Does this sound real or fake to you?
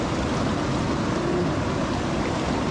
real